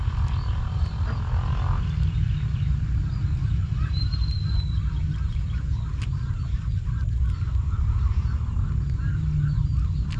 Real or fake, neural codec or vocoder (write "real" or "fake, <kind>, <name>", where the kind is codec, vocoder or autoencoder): real